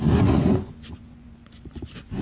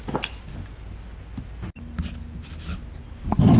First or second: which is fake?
first